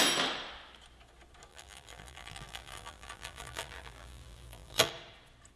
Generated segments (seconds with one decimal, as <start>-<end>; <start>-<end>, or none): 1.5-4.9